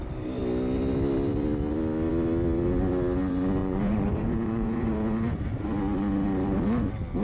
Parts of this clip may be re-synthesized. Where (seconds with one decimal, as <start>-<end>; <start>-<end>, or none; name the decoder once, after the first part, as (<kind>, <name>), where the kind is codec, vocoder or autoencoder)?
3.6-4.9 (vocoder, Vocos)